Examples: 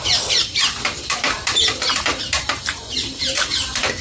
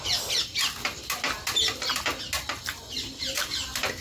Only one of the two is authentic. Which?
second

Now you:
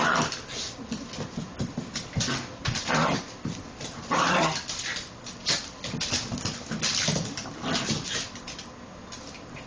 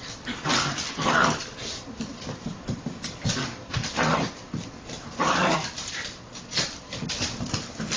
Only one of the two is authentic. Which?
first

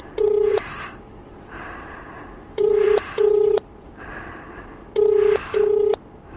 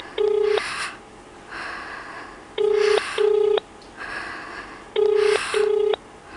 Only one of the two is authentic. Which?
second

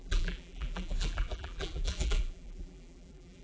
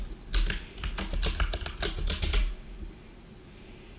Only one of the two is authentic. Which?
second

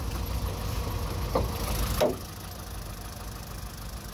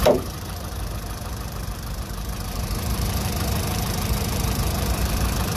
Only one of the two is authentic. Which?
first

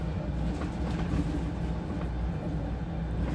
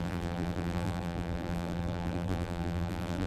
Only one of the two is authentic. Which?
first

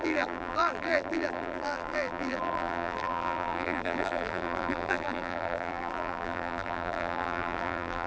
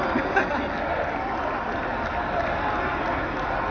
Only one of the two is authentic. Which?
second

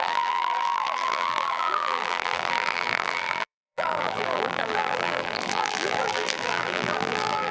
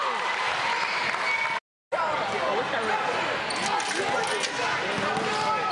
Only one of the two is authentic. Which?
second